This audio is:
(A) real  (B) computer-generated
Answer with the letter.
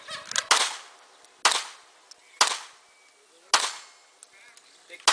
A